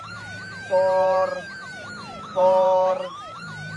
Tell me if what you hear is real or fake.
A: fake